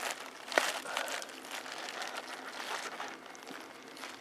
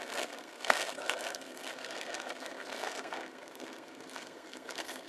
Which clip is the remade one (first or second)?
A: second